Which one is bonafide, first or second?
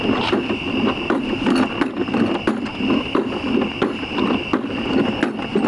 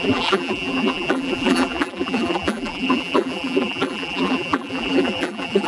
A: first